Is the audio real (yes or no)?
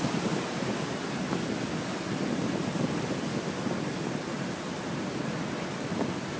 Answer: yes